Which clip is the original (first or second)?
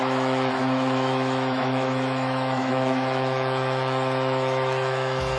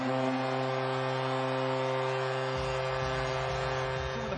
second